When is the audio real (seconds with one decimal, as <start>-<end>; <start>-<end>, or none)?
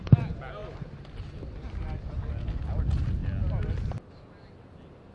0.0-5.1